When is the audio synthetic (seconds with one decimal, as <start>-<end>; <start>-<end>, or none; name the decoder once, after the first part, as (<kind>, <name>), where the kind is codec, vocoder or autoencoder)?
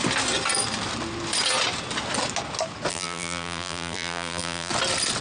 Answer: 2.9-4.7 (vocoder, BigVGAN v2)